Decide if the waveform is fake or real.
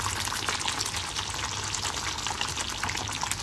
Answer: real